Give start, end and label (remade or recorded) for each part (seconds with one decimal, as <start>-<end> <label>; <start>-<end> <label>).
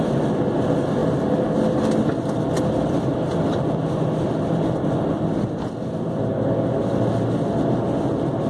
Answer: 0.0-8.5 recorded